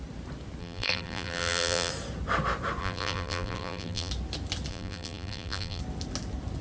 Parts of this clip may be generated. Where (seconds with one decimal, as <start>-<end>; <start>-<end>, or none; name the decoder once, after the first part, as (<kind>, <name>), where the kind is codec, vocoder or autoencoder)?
0.6-1.9 (vocoder, BigVGAN v2); 2.8-4.1; 4.7-5.8